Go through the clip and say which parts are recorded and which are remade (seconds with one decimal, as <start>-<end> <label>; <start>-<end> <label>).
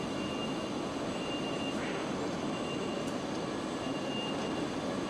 0.0-0.4 remade; 0.4-1.7 recorded; 1.7-5.1 remade